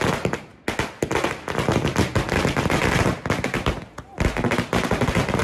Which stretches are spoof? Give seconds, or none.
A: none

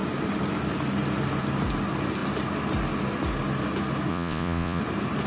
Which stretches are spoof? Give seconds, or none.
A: 4.1-4.8

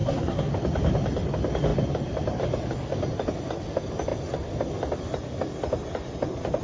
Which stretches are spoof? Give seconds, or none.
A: 0.0-0.5